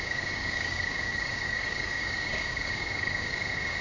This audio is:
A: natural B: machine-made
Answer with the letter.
B